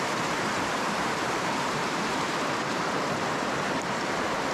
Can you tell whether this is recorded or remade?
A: remade